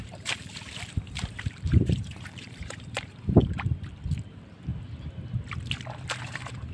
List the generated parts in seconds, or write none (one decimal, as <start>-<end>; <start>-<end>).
0.0-3.4; 4.3-4.7; 6.2-6.7